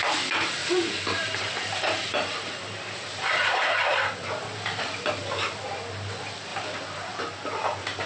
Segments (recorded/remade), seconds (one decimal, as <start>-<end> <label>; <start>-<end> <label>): 0.0-0.6 recorded; 0.6-5.1 remade; 5.1-6.5 recorded; 6.5-7.2 remade; 7.2-8.1 recorded